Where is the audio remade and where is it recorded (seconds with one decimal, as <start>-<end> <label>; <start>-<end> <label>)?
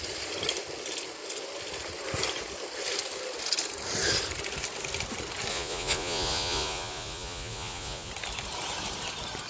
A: 0.0-5.5 recorded; 5.5-8.1 remade; 8.1-9.5 recorded